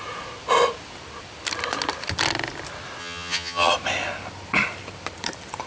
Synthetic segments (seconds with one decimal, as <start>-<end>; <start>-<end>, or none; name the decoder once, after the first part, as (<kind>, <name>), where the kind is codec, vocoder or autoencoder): 3.0-3.7 (vocoder, HiFi-GAN)